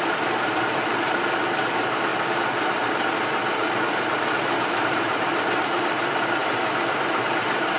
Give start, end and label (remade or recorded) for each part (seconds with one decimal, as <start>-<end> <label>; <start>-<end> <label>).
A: 0.0-2.1 remade; 2.1-4.9 recorded; 4.9-7.8 remade